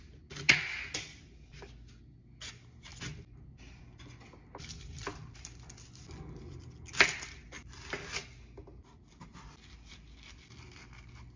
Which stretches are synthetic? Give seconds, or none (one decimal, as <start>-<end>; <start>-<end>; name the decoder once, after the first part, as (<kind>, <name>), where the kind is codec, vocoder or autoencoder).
2.9-3.8 (vocoder, BigVGAN v2); 4.9-6.0; 9.3-10.4